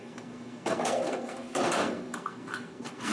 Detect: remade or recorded remade